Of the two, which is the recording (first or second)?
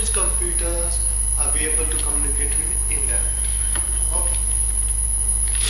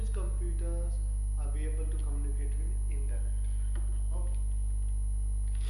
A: second